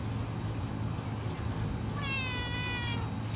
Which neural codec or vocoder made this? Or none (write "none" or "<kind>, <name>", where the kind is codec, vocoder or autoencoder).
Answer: none